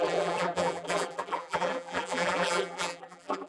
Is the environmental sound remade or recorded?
remade